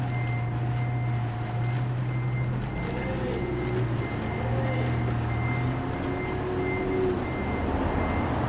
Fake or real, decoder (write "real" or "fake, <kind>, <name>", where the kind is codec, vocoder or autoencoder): real